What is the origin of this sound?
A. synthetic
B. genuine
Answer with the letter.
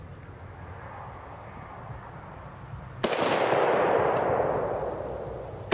B